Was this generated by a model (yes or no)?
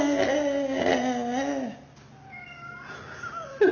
no